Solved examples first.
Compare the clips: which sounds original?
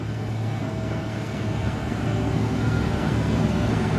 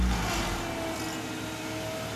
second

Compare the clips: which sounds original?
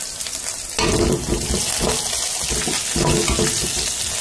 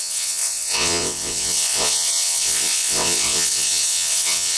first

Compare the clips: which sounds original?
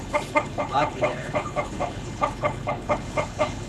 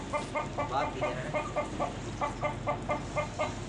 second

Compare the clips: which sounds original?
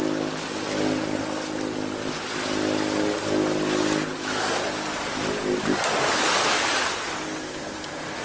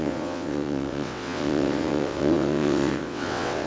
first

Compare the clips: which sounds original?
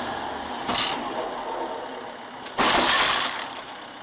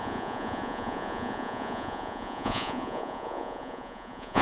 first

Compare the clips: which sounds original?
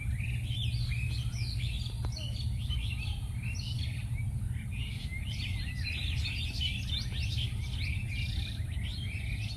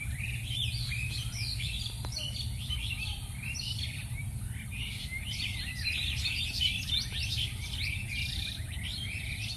first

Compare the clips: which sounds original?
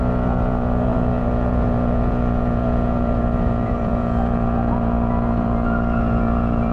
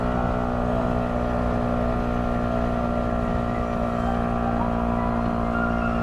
second